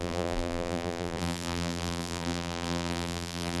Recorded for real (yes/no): no